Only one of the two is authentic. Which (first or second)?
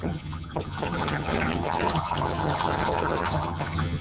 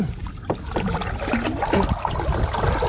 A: second